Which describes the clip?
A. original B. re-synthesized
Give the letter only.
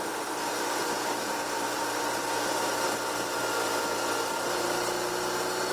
A